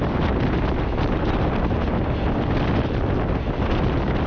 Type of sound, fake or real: real